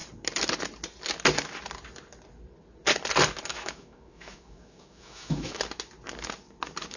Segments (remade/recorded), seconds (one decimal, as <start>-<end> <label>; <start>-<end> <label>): 0.0-3.5 recorded; 3.5-5.6 remade; 5.6-7.0 recorded